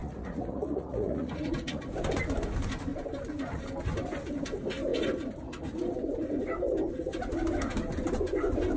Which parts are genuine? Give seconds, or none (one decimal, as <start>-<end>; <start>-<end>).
1.8-8.8